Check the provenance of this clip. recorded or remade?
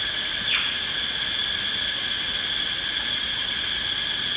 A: recorded